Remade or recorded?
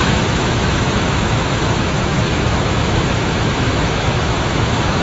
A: remade